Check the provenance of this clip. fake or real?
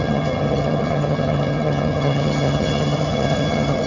fake